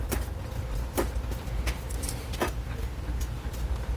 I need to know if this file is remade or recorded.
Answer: recorded